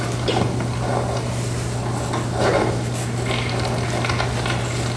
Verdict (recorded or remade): recorded